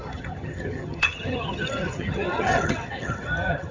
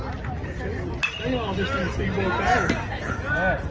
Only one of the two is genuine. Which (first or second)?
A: second